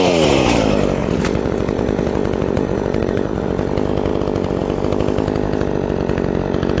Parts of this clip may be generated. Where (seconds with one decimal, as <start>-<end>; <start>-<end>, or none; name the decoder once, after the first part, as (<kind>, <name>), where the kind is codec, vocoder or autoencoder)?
1.0-3.5 (vocoder, Vocos)